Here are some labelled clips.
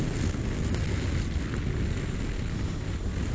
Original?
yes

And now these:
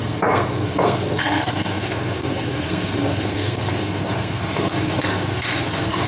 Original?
no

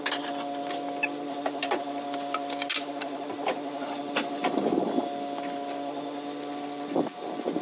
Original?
yes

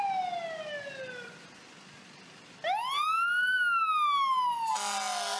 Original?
yes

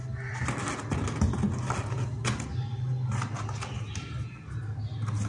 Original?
yes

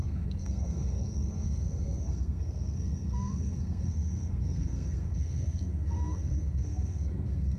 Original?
no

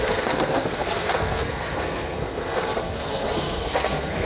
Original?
no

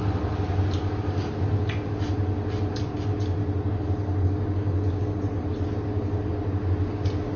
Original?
yes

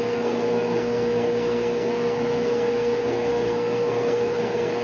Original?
no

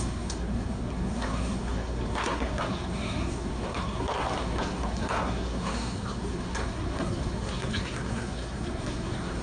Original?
no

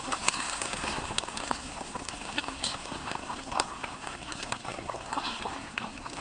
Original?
no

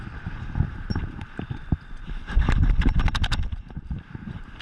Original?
yes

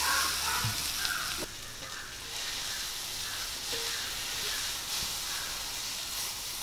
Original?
yes